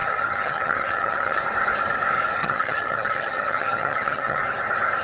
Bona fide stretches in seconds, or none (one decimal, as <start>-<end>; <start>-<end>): 1.4-2.4; 4.4-5.0